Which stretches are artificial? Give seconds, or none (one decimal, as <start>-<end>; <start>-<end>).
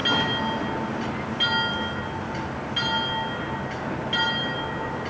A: none